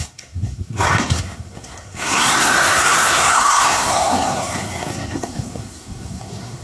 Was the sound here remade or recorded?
remade